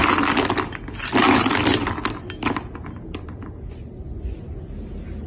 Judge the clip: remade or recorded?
recorded